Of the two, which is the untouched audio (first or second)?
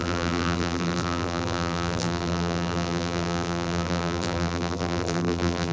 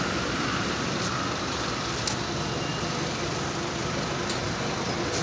second